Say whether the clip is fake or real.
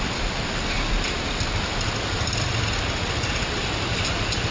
real